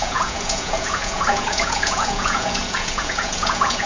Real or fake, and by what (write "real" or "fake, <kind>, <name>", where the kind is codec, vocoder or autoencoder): fake, vocoder, Vocos